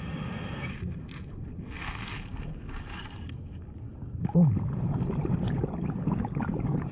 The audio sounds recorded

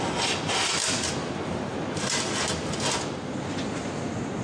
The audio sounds recorded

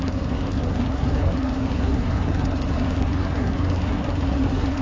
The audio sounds remade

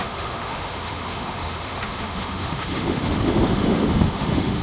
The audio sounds remade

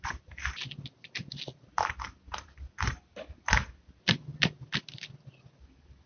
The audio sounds recorded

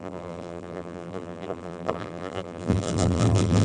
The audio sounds remade